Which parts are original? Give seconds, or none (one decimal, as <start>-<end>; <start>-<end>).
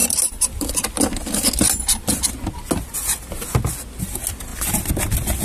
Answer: 2.3-5.4